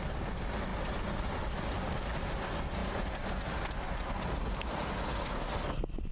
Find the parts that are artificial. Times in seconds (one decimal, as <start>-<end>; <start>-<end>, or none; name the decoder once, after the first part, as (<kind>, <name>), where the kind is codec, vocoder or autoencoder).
none